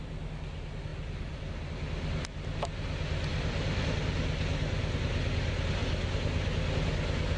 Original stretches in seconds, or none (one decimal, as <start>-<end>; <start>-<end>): 0.0-7.4